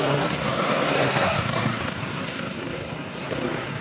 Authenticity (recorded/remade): remade